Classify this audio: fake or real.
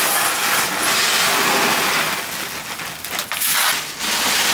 real